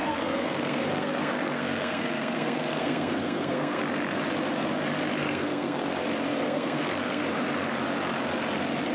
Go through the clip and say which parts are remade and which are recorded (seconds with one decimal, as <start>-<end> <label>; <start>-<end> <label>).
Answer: 0.0-3.8 remade; 3.8-5.2 recorded; 5.2-5.8 remade; 5.8-6.3 recorded; 6.3-7.2 remade; 7.2-8.9 recorded